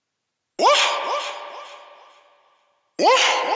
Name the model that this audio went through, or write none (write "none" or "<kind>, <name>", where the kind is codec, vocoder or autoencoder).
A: none